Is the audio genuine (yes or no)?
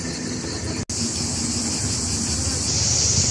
yes